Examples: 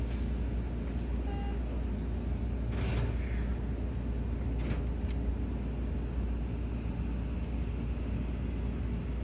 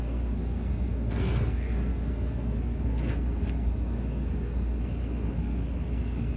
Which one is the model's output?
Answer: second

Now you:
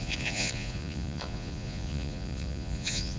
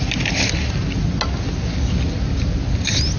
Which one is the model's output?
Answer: first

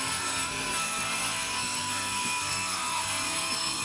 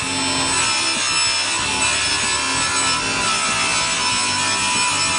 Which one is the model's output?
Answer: first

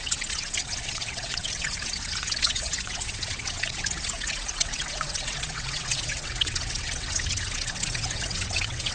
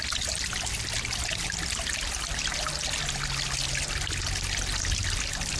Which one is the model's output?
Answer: first